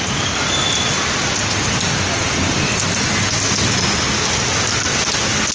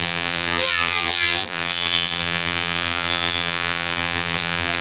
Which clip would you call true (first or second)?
first